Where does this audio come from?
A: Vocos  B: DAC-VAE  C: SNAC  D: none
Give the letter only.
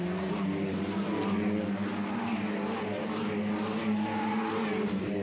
D